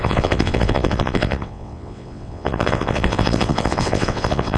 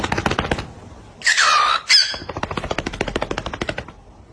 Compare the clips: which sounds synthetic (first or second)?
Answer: first